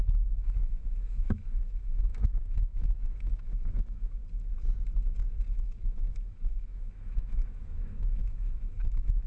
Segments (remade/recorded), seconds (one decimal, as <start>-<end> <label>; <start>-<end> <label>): 0.0-4.2 remade; 4.2-5.5 recorded; 5.5-9.3 remade